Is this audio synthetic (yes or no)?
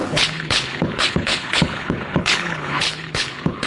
yes